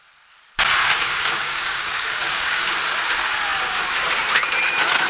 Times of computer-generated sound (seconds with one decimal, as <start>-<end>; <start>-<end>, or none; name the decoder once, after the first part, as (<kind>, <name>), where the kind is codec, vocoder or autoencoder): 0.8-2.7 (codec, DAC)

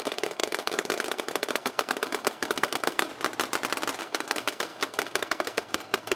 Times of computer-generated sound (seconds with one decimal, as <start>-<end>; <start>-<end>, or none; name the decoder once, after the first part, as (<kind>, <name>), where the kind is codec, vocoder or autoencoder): 0.0-3.1 (codec, SNAC); 4.0-6.2

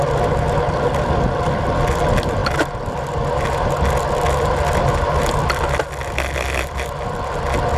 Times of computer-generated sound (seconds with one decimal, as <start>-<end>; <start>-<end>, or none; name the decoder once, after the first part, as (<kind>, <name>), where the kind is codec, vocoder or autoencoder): none